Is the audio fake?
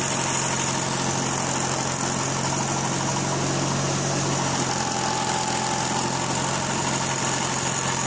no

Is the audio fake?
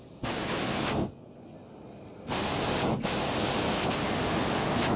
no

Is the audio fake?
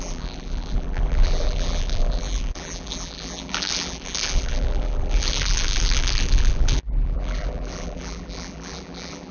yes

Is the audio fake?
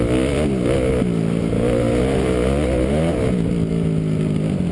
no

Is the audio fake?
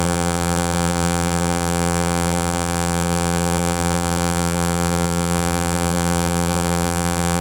yes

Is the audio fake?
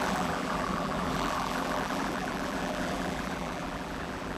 yes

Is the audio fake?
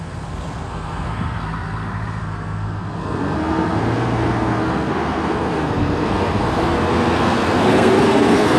yes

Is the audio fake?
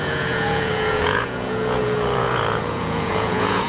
yes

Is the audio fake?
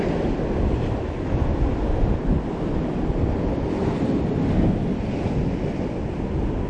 no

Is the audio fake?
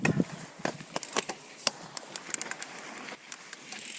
no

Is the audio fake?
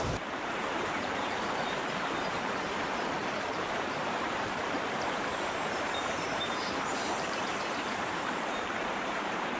yes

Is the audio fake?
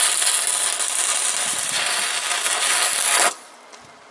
no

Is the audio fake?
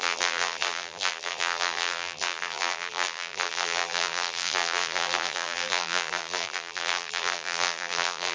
yes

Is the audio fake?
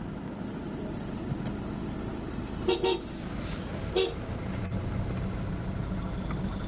no